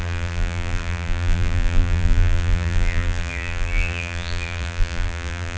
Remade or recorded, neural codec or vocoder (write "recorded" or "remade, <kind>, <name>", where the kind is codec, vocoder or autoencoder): remade, vocoder, BigVGAN v2